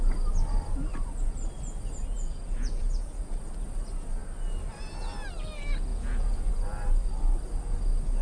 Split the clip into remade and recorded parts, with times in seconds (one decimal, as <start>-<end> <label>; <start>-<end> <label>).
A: 0.0-2.0 recorded; 2.0-3.4 remade; 3.4-5.9 recorded; 5.9-6.5 remade; 6.5-8.2 recorded